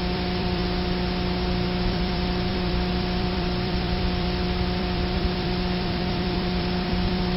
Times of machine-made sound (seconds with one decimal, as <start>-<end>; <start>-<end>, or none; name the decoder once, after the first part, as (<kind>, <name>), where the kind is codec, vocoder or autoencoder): 0.0-0.6 (vocoder, BigVGAN v2); 1.9-7.4